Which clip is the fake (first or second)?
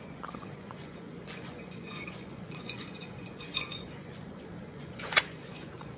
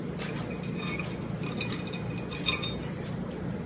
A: first